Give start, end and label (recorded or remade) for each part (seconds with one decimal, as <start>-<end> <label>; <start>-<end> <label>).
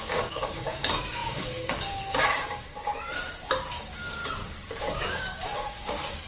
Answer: 0.0-2.9 remade; 2.9-3.8 recorded; 3.8-4.2 remade; 4.2-4.8 recorded; 4.8-6.3 remade